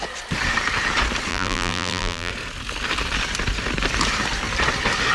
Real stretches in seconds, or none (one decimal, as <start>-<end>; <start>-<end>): 0.0-1.3; 2.3-5.1